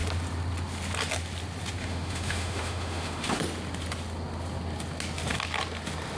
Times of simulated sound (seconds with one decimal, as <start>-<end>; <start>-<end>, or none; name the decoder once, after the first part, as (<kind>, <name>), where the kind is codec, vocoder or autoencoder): 1.8-3.4 (autoencoder, DAC-VAE)